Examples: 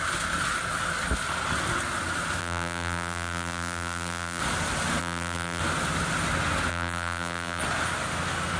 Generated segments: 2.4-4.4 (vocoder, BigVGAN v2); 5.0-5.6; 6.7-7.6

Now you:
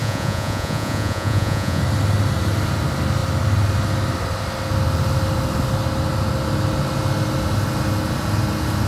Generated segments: 0.0-1.8 (vocoder, Vocos)